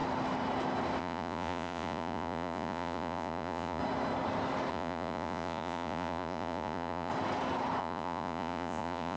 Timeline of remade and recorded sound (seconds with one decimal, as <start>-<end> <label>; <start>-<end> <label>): 0.0-1.0 recorded; 1.0-3.8 remade; 3.8-4.7 recorded; 4.7-7.1 remade; 7.1-7.8 recorded; 7.8-9.2 remade